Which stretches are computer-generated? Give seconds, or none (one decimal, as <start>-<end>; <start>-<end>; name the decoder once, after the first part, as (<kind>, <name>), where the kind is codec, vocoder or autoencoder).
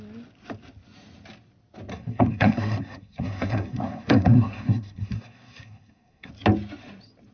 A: 1.9-6.3 (codec, SNAC)